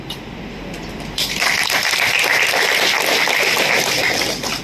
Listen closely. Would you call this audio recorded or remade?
recorded